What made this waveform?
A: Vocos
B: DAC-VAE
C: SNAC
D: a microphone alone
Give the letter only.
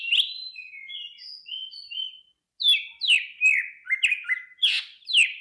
D